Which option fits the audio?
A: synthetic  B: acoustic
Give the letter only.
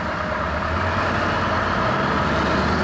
B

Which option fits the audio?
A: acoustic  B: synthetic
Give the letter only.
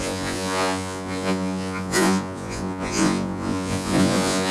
B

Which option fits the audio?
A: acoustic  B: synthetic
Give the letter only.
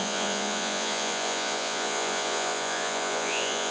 B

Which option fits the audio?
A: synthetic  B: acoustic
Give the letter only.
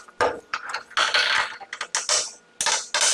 B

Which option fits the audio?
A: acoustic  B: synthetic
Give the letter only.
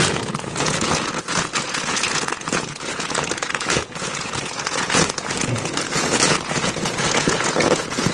B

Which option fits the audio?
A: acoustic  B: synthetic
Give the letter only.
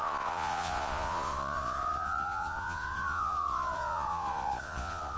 B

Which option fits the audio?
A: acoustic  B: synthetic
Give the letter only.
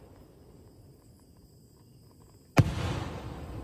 A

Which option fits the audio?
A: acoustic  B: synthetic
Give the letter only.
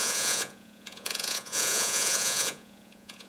B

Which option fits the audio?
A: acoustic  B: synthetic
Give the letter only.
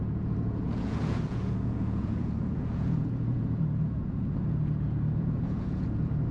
B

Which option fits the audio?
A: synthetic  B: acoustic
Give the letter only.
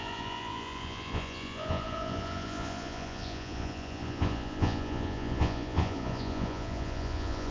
A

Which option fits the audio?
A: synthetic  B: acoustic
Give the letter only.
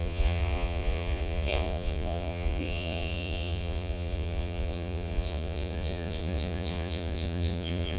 A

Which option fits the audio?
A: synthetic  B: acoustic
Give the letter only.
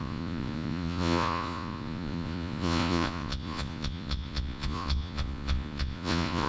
A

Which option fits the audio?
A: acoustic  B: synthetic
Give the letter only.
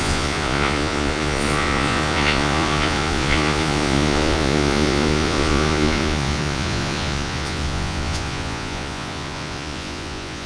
B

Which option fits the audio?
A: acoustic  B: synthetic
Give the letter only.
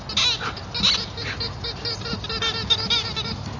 A